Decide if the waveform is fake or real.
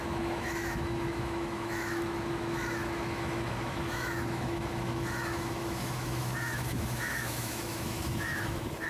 fake